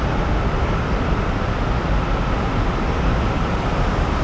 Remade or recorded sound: recorded